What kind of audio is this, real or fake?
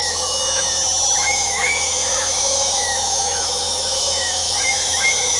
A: fake